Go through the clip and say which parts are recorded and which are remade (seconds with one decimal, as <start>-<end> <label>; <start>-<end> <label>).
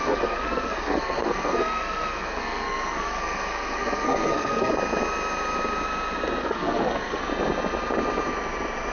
0.0-4.7 remade; 4.7-6.4 recorded; 6.4-7.2 remade; 7.2-8.9 recorded